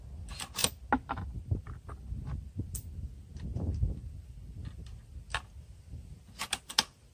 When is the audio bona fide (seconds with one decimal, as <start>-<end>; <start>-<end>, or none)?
0.0-7.1